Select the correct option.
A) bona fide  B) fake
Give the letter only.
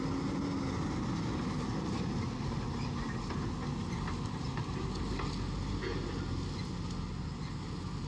A